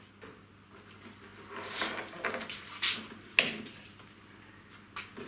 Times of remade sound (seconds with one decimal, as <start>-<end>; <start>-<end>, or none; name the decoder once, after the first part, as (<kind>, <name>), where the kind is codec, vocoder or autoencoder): none